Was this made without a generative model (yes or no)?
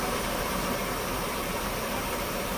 no